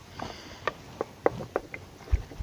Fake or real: real